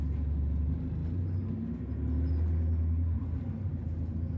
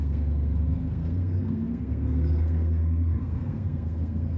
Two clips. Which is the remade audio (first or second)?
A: second